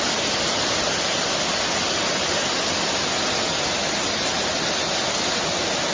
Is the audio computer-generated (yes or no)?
no